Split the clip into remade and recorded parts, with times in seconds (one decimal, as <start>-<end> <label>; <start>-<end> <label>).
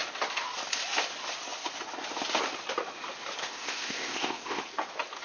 0.0-3.4 recorded; 3.4-4.6 remade; 4.6-5.2 recorded